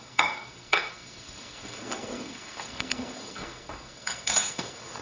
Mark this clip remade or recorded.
remade